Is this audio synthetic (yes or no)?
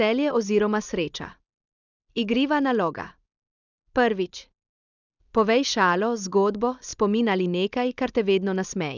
no